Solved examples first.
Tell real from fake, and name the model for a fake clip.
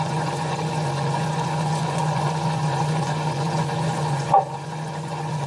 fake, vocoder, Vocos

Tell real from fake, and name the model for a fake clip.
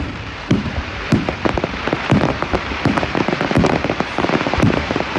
fake, vocoder, BigVGAN v2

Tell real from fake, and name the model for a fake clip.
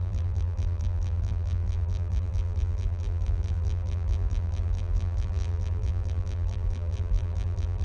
fake, vocoder, BigVGAN v2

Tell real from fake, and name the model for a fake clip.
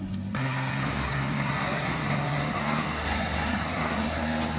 fake, codec, SNAC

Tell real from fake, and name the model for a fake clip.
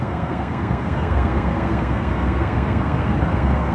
fake, codec, SNAC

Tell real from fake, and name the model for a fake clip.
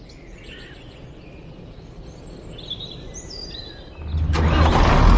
real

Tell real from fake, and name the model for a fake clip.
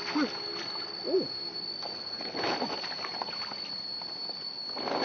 real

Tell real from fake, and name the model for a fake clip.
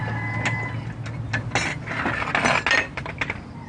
real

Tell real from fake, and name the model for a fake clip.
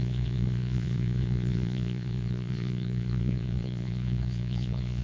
fake, vocoder, Vocos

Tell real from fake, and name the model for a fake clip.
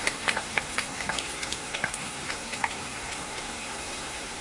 fake, codec, SNAC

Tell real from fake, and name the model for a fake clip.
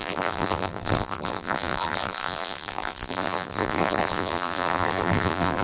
fake, vocoder, BigVGAN v2